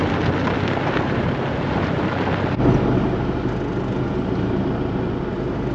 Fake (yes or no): no